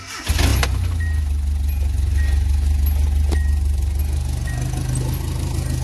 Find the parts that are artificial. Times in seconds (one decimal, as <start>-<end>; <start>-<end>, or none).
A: none

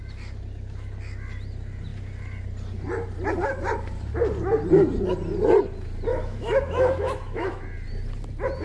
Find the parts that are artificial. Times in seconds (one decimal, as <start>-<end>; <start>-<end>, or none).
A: 6.1-7.6

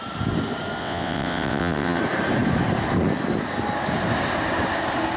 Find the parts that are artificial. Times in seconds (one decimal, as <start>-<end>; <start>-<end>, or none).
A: 0.8-2.0

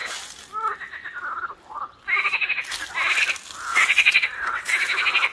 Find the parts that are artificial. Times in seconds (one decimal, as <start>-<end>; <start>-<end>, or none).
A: 3.7-4.7

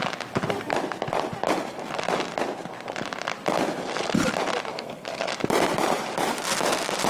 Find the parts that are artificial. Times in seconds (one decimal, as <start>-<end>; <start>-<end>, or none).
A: 4.7-5.3

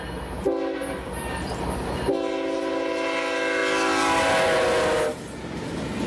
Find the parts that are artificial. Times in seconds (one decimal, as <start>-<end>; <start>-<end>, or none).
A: none

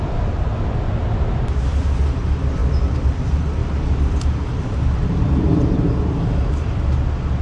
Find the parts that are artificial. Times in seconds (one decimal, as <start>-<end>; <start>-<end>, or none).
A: 2.6-3.2; 3.6-5.8